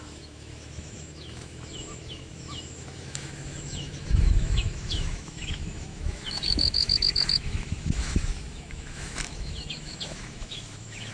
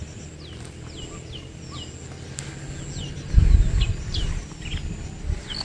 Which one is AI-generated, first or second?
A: first